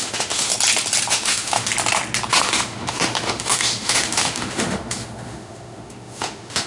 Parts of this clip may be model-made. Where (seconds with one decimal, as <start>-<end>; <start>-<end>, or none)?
0.0-0.5; 1.1-1.7; 2.3-6.7